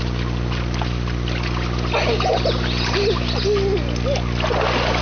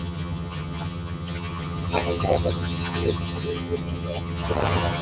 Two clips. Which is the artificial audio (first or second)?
second